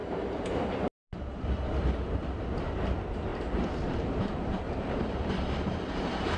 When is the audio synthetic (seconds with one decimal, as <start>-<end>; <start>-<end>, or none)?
0.0-0.8; 3.3-6.4